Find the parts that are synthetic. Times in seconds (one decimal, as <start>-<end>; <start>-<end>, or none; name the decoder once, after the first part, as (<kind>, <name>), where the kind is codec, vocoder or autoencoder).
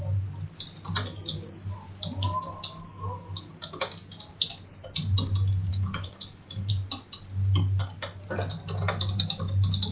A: 2.9-3.5 (autoencoder, DAC-VAE); 5.7-6.7